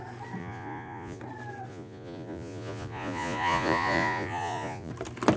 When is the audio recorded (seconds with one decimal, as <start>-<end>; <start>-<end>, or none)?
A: 0.0-0.4; 1.2-1.7; 4.9-5.4